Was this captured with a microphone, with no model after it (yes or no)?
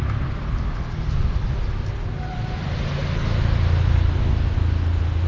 yes